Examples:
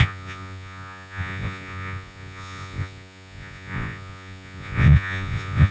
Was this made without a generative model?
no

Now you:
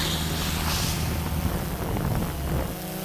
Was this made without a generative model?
yes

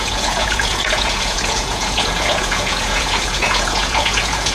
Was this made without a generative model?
no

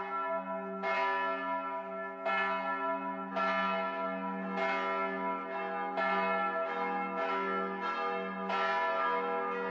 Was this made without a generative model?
yes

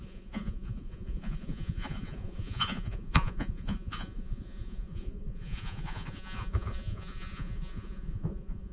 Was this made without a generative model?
no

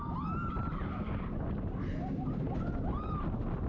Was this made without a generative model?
yes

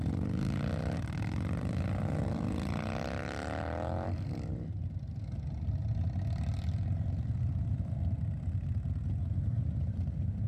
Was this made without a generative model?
yes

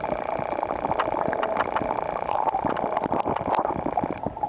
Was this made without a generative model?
yes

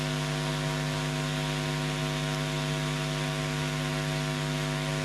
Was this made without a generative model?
yes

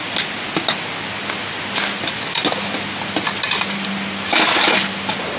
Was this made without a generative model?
yes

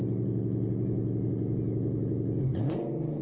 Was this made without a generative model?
yes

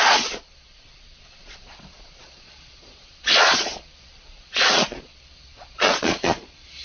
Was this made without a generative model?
no